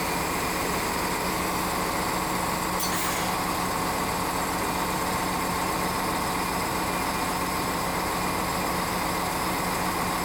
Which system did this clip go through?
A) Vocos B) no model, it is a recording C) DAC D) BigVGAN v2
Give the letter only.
B